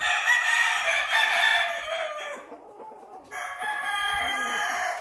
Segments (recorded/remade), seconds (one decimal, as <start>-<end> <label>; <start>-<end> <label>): 0.0-1.5 remade; 1.5-4.2 recorded; 4.2-5.0 remade